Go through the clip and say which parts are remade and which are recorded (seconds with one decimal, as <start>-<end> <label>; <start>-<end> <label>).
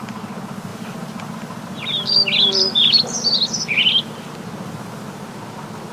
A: 0.0-0.7 recorded; 0.7-3.0 remade; 3.0-5.9 recorded